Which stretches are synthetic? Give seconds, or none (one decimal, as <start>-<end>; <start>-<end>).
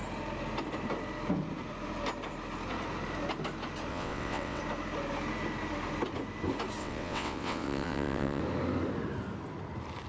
3.9-4.6; 6.8-8.4